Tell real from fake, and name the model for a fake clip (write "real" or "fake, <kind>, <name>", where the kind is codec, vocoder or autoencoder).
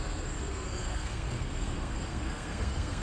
fake, codec, SNAC